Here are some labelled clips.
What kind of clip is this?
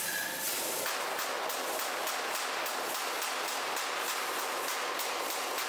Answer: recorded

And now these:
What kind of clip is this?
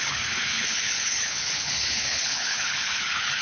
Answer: remade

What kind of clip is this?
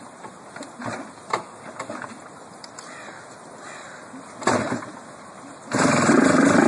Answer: remade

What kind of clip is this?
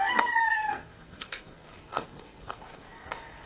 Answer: remade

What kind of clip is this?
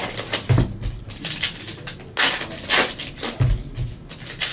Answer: recorded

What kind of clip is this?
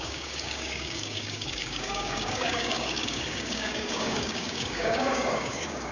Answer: remade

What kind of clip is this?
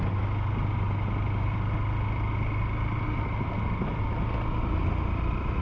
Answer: recorded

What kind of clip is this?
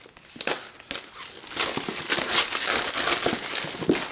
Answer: recorded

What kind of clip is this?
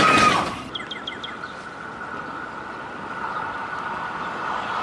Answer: recorded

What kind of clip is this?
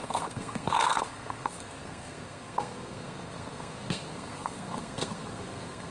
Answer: remade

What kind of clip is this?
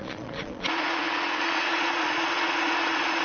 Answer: remade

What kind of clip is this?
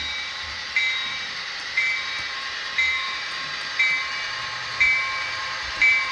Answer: remade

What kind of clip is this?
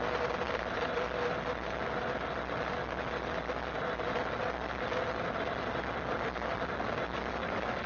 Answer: recorded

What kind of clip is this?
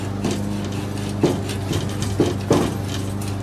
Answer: recorded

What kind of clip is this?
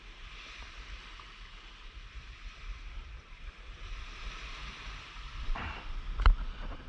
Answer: remade